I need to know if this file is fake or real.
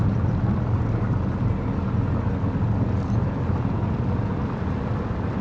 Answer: real